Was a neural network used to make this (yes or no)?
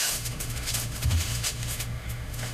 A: yes